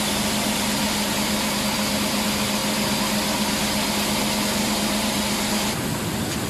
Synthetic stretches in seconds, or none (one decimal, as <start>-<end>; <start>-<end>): none